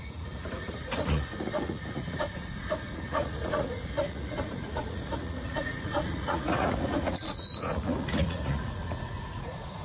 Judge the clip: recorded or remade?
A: remade